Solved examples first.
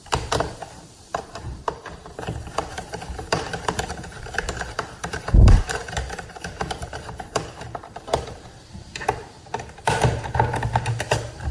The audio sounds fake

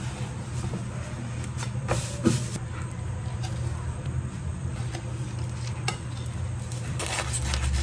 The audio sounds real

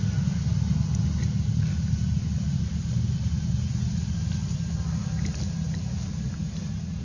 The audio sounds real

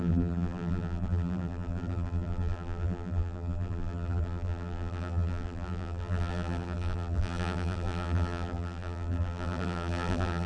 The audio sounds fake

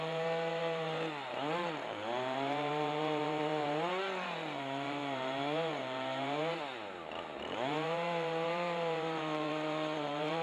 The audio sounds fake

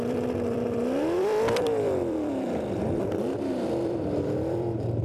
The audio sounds fake